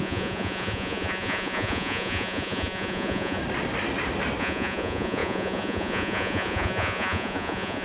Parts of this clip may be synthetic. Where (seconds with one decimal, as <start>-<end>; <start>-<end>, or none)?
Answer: 0.0-3.4; 4.4-7.8